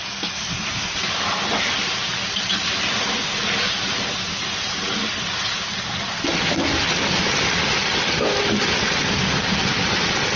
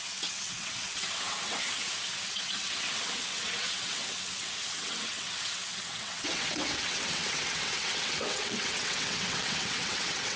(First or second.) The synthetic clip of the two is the second